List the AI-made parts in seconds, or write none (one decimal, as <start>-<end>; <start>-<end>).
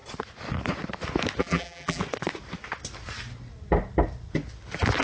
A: 1.4-2.0